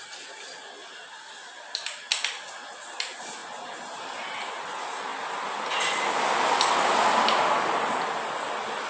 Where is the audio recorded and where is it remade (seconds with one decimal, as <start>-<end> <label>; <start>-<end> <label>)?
0.0-8.9 recorded